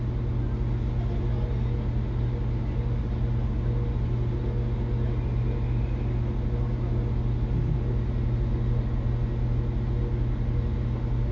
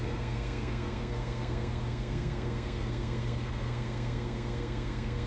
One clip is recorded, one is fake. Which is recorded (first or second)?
first